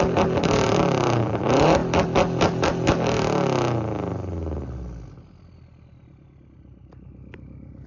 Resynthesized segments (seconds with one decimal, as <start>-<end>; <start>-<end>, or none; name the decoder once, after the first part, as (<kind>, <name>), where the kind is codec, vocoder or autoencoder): 0.0-1.8 (vocoder, BigVGAN v2); 6.5-7.9